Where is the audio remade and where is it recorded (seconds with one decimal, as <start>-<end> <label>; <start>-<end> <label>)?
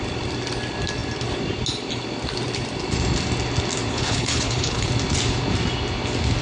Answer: 0.0-3.9 recorded; 3.9-4.9 remade; 4.9-6.4 recorded